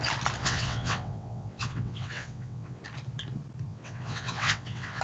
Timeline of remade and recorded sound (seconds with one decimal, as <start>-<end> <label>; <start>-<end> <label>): 0.0-0.4 recorded; 0.4-2.8 remade; 2.8-3.7 recorded; 3.7-5.0 remade